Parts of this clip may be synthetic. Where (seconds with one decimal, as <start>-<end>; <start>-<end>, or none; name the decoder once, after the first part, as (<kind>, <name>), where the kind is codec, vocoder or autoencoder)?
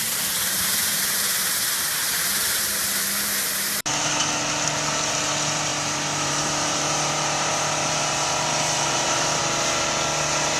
5.7-9.4 (vocoder, BigVGAN v2)